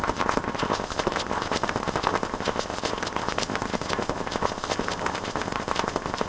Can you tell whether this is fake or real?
fake